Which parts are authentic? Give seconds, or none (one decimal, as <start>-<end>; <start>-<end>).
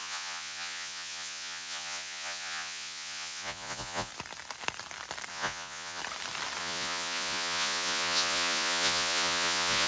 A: 4.1-5.3; 6.0-6.6